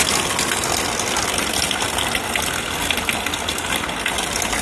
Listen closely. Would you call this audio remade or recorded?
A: recorded